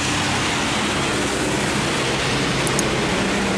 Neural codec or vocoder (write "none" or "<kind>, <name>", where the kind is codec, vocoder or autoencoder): none